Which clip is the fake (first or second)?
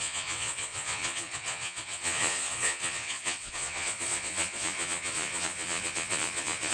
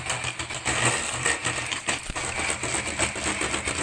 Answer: first